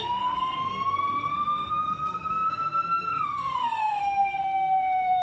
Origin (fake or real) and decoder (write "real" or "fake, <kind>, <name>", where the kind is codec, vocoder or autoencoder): fake, codec, SNAC